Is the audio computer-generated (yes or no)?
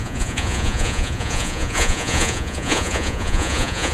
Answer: yes